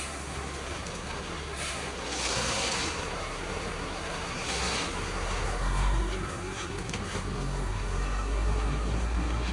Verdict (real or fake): fake